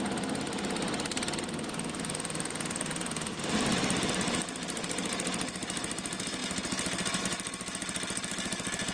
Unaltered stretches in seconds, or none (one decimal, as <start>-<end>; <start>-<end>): 0.0-8.9